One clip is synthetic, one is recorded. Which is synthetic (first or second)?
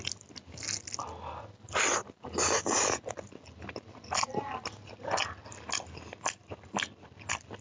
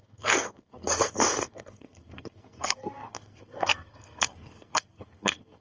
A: second